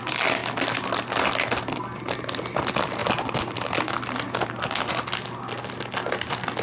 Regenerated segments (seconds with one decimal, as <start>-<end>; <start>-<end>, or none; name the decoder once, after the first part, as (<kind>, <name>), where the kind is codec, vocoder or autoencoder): none